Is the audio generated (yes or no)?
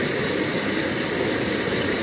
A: no